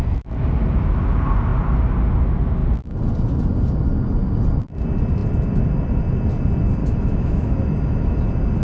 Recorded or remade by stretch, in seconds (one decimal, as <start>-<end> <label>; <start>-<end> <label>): 0.0-6.8 recorded; 6.8-8.2 remade; 8.2-8.6 recorded